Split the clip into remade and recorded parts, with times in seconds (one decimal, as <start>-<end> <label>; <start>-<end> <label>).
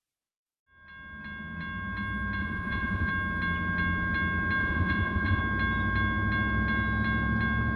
0.0-2.4 recorded; 2.4-3.1 remade; 3.1-4.6 recorded; 4.6-5.4 remade; 5.4-7.8 recorded